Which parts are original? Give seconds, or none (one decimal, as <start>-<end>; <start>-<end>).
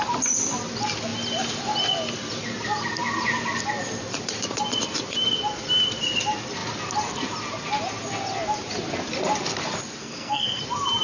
0.0-10.0; 10.6-11.0